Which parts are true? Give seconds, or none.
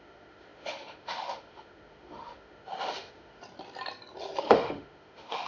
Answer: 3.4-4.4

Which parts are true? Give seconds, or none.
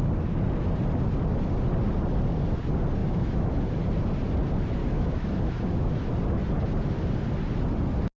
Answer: 0.0-3.0; 3.5-4.8; 5.9-8.2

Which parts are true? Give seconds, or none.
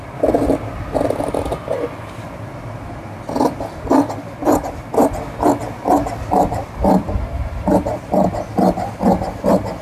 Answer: 0.0-9.8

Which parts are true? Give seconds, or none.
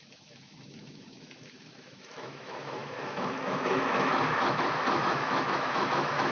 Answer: none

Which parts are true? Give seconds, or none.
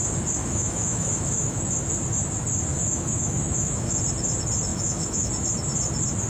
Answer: 0.0-0.4; 1.6-2.7; 4.0-4.7; 5.3-6.3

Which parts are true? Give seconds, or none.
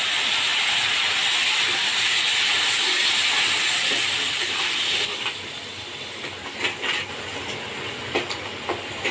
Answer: 0.0-9.1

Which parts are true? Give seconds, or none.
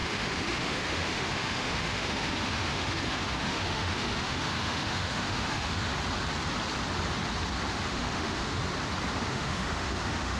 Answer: 5.9-7.7; 8.6-9.3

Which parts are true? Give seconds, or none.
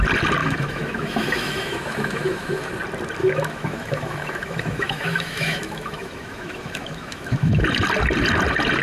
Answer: 0.0-0.4; 2.7-3.2; 7.6-8.8